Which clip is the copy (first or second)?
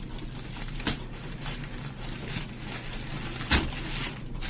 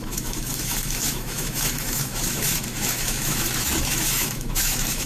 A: second